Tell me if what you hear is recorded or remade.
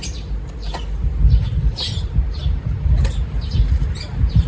recorded